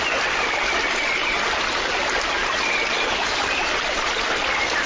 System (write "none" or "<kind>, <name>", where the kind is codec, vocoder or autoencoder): none